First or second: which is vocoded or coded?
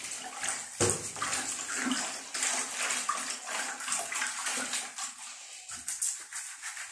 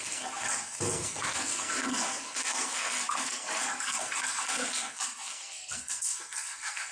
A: second